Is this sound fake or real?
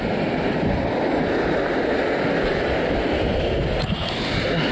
real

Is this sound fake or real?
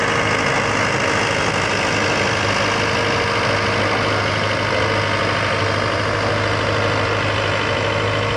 real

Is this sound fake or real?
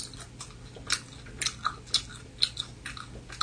real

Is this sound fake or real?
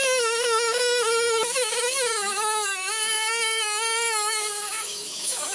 fake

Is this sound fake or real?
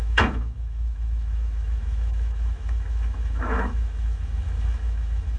fake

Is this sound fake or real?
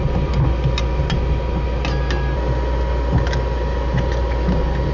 real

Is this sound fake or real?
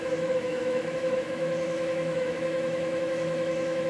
fake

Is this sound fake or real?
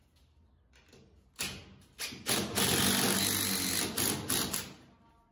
real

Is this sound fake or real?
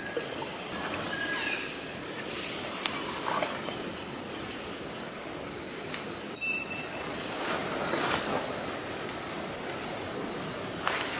real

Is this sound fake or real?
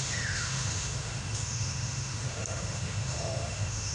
fake